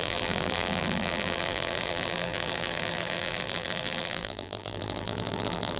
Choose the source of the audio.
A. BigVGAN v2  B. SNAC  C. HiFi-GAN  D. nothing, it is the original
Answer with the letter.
A